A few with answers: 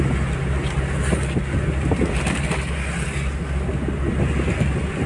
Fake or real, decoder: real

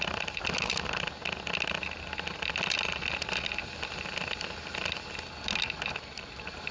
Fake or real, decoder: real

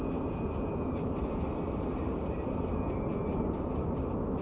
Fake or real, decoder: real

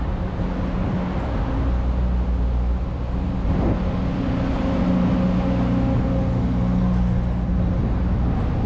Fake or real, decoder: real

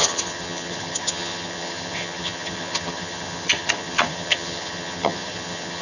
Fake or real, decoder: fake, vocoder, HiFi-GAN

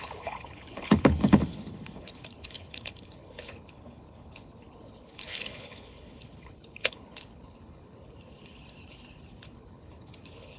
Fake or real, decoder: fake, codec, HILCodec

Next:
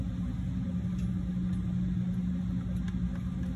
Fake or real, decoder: real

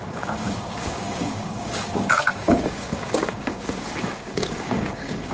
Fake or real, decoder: fake, codec, DAC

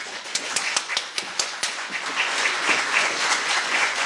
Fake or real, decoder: fake, vocoder, Vocos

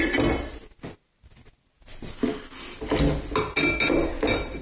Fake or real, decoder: real